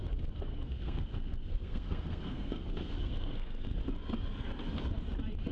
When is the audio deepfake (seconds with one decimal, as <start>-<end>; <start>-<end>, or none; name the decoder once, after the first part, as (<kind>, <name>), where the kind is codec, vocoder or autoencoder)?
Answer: 0.5-3.8 (codec, SNAC)